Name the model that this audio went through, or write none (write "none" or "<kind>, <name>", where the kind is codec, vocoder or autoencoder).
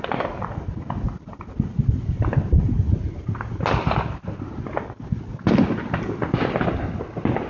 none